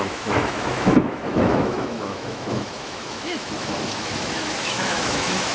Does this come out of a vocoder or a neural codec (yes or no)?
yes